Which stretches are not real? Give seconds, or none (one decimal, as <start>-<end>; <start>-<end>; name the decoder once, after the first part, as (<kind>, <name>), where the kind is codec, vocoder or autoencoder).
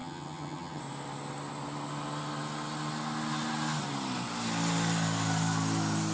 0.0-0.8 (vocoder, HiFi-GAN)